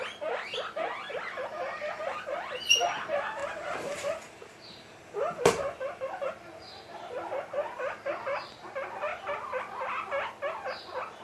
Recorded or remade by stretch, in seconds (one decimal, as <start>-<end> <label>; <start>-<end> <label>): 0.0-3.4 recorded; 3.4-6.3 remade; 6.3-11.2 recorded